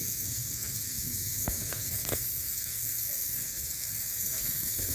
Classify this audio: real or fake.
fake